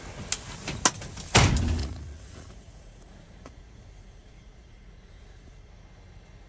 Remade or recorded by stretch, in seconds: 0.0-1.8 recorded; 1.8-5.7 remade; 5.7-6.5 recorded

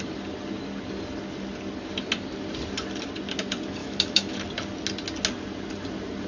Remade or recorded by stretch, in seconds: 0.0-3.8 recorded; 3.8-4.3 remade; 4.3-6.3 recorded

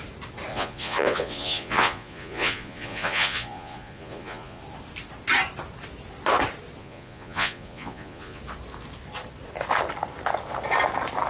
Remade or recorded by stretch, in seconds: 0.0-0.5 recorded; 0.5-4.6 remade; 4.6-6.8 recorded; 6.8-8.4 remade; 8.4-11.3 recorded

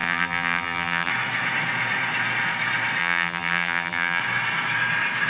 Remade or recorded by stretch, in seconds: 0.0-1.1 remade; 1.1-3.0 recorded; 3.0-4.2 remade; 4.2-5.3 recorded

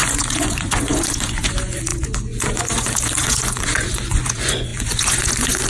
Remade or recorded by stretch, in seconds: 0.0-5.7 remade

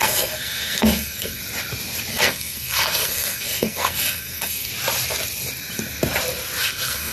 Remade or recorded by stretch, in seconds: 0.0-1.4 remade; 1.4-2.1 recorded; 2.1-4.7 remade; 4.7-6.6 recorded; 6.6-7.1 remade

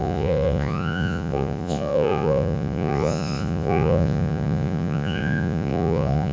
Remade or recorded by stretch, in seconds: 0.0-6.3 remade

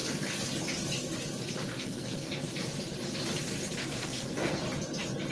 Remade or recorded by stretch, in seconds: 0.0-1.7 recorded; 1.7-2.3 remade; 2.3-3.8 recorded; 3.8-4.6 remade; 4.6-5.3 recorded